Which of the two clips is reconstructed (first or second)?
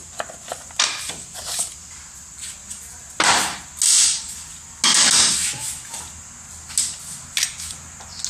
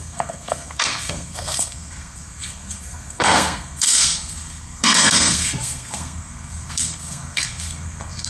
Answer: second